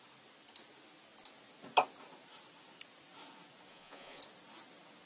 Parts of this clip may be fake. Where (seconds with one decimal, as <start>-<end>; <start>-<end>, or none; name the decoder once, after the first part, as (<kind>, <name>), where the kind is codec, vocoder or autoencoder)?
3.7-4.2 (vocoder, Vocos)